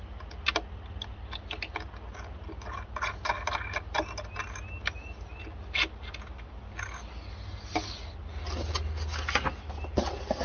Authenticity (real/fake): real